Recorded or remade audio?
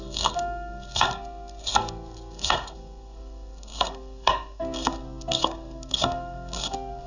remade